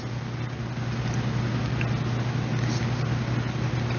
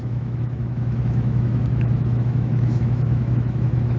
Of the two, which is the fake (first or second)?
second